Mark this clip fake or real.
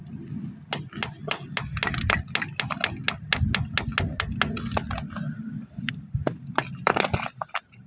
real